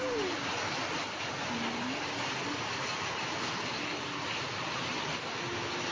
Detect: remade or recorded recorded